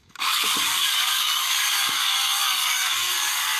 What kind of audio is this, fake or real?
fake